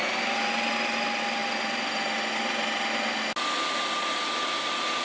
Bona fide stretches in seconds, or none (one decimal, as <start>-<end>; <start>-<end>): 0.0-5.0